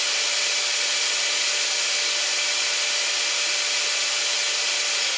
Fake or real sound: real